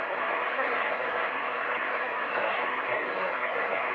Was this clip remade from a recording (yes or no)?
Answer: yes